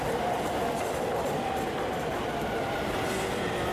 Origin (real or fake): real